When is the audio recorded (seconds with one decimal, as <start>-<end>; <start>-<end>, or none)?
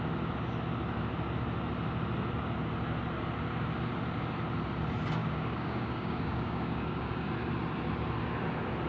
0.0-5.2; 7.3-8.9